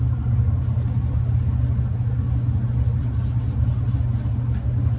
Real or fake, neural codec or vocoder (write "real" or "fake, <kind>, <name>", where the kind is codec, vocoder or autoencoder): real